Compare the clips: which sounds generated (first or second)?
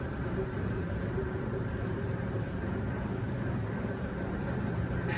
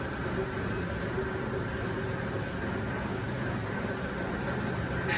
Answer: first